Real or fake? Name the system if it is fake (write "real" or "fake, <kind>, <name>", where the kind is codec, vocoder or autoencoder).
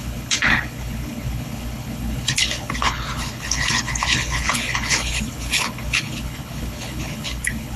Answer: fake, codec, HILCodec